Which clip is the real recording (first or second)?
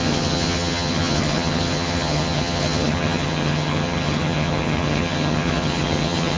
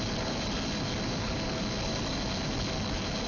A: second